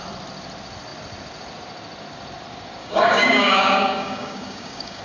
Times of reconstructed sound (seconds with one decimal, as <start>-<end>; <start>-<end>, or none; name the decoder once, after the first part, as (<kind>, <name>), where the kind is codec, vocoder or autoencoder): 2.8-5.0 (codec, DAC)